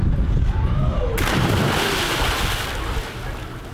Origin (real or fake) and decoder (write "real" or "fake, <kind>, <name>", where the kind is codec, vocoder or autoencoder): real